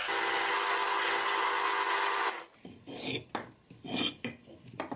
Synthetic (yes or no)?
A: no